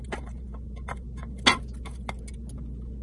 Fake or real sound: real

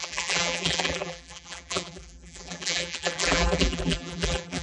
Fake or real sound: fake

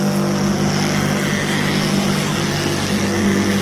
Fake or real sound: real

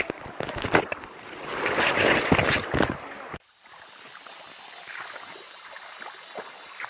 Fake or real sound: real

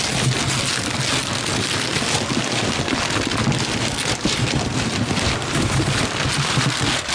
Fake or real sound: real